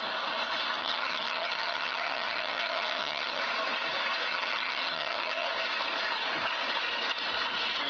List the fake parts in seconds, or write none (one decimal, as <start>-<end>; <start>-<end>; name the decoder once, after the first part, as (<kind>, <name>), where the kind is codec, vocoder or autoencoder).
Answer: 0.8-3.4 (vocoder, HiFi-GAN); 4.3-5.5